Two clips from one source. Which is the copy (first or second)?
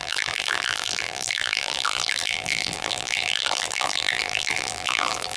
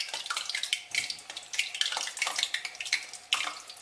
first